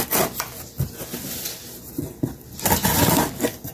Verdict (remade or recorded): recorded